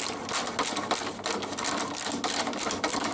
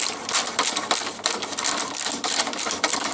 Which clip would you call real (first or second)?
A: first